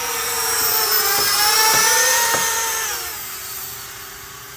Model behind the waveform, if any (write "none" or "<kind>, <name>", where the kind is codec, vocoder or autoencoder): vocoder, BigVGAN v2